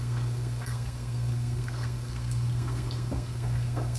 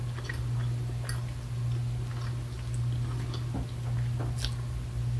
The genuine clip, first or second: second